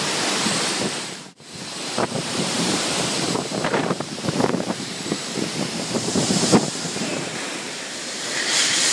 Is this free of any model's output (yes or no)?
no